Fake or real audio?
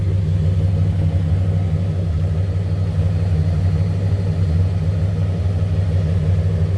real